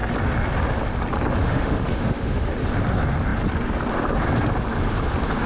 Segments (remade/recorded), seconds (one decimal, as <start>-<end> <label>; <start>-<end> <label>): 0.0-1.4 recorded; 1.4-2.5 remade; 2.5-5.5 recorded

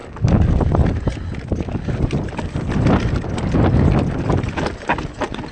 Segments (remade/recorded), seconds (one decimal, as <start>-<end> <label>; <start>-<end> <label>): 0.0-5.5 recorded

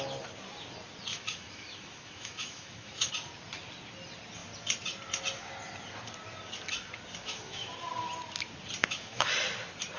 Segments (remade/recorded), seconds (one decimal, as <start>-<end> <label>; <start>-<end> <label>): 0.0-1.1 recorded; 1.1-3.1 remade; 3.1-7.2 recorded; 7.2-7.7 remade; 7.7-8.8 recorded; 8.8-9.3 remade; 9.3-10.0 recorded

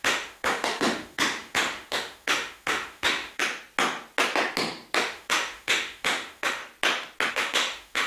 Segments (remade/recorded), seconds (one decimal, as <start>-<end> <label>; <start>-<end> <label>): 0.0-3.4 remade; 3.4-5.0 recorded; 5.0-6.6 remade; 6.6-7.3 recorded; 7.3-8.1 remade

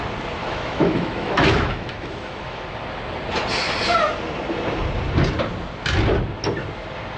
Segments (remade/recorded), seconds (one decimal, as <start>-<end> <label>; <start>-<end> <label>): 0.0-0.4 recorded; 0.4-2.6 remade; 2.6-7.2 recorded

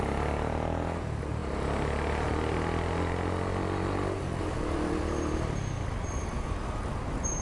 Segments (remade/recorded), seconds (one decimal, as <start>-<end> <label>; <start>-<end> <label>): 0.0-7.4 recorded

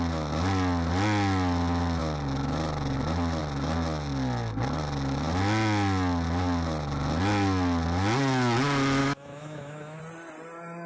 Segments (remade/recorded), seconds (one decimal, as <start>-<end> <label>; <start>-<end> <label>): 0.0-9.0 recorded; 9.0-10.0 remade; 10.0-10.9 recorded

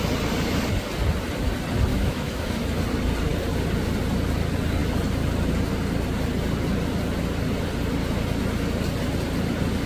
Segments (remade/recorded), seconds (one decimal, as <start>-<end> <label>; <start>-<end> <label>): 0.0-1.9 recorded; 1.9-2.6 remade; 2.6-9.9 recorded